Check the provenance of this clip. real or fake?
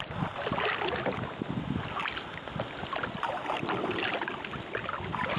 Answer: real